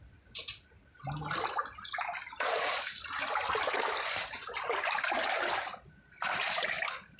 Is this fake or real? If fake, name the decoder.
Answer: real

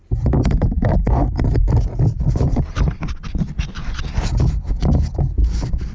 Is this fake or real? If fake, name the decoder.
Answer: real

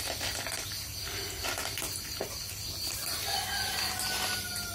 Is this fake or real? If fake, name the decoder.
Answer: real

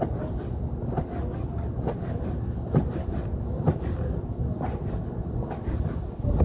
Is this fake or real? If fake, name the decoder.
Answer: real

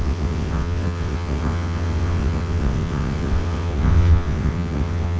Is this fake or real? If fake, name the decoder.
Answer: fake, vocoder, WaveNeXt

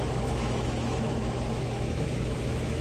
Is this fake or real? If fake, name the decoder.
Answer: fake, autoencoder, DAC-VAE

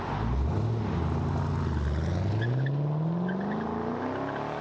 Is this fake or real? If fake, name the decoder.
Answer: real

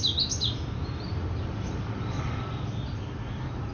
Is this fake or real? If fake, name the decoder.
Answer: real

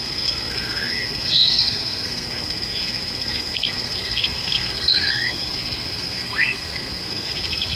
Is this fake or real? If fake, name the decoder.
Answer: fake, codec, SNAC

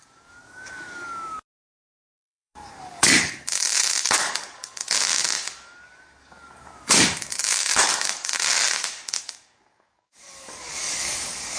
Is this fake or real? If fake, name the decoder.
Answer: fake, codec, DAC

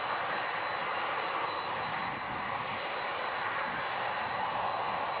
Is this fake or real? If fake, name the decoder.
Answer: real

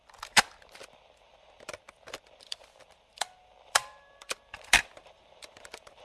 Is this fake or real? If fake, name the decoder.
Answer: fake, vocoder, BigVGAN v2